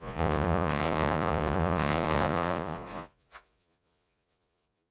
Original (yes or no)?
no